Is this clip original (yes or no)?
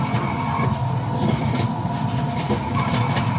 yes